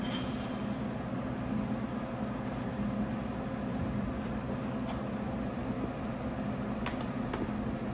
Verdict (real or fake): real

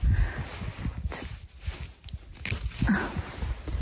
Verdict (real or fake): real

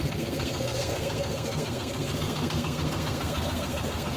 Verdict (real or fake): fake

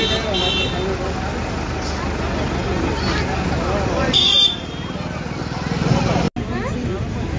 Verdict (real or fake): real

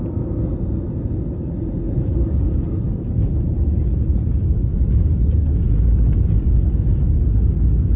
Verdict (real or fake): real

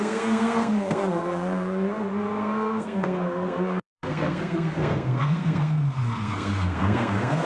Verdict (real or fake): fake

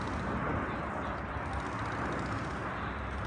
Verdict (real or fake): real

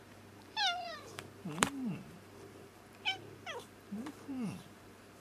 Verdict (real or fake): fake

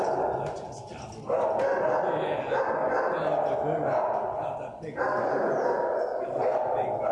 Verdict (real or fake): real